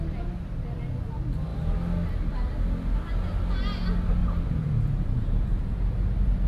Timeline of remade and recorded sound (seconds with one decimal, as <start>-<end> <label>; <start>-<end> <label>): 0.0-4.2 recorded; 4.2-5.8 remade; 5.8-6.5 recorded

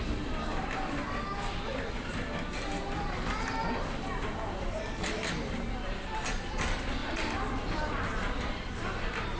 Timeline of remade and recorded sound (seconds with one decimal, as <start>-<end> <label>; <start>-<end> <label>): 0.0-9.4 recorded